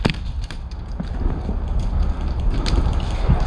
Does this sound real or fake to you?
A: real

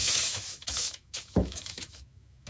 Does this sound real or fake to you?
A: fake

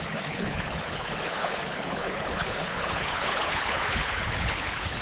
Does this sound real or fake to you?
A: fake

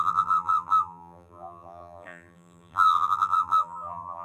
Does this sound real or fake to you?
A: fake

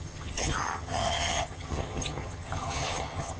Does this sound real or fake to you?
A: fake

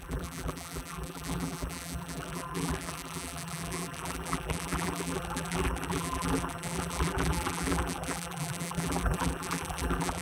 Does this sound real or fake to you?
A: fake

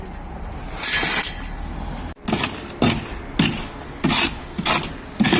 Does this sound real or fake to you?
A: real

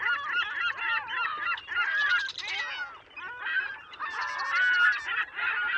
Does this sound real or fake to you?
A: real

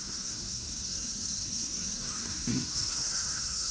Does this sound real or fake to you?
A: fake